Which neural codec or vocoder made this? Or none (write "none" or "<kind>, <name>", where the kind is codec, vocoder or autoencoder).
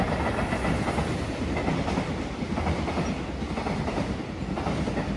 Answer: none